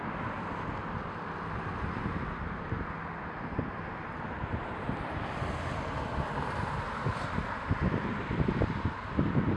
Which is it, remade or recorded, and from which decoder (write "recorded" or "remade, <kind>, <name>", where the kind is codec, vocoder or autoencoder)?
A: recorded